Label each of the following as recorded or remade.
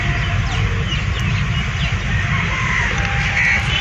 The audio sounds recorded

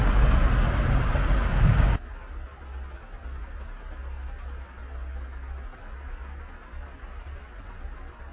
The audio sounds recorded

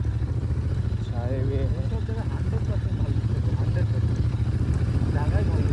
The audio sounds recorded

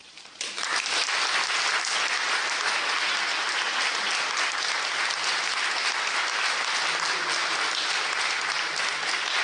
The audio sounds recorded